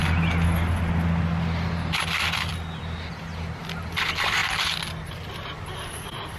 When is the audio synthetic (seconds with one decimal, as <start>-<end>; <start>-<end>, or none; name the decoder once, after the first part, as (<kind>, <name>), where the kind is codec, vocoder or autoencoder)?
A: none